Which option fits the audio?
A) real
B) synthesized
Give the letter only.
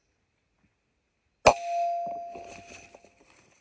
A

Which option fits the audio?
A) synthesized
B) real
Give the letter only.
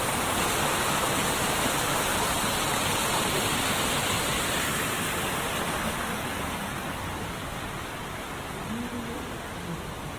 B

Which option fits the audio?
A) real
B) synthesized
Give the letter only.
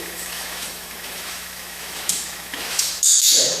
B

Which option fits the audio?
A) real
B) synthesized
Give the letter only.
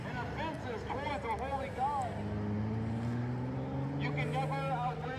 A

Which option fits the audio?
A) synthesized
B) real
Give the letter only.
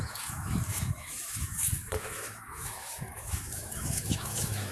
A